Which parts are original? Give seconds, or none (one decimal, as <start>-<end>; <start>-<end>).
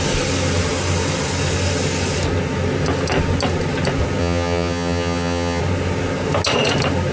0.0-4.2; 5.6-7.1